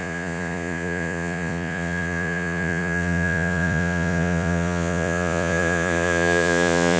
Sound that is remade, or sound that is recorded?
remade